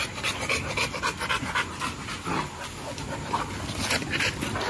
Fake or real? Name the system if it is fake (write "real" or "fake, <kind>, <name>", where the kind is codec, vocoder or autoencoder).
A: real